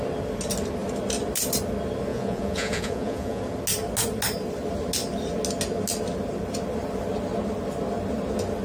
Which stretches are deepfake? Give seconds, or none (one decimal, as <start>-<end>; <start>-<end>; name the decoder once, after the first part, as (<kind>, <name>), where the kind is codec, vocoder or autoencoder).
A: 2.1-3.4 (vocoder, Vocos)